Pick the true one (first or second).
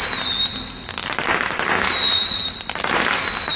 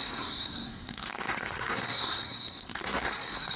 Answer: first